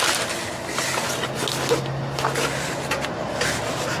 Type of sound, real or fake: real